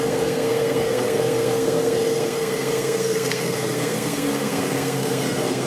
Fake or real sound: fake